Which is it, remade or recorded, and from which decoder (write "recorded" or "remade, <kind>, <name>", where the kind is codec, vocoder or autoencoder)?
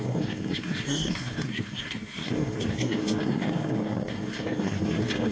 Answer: remade, codec, SNAC